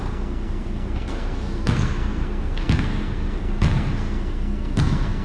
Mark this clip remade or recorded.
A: remade